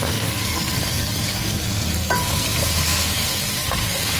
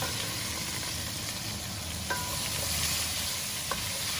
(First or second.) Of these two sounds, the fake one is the first